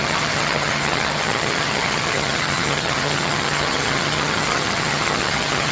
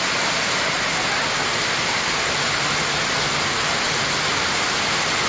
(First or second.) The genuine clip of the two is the second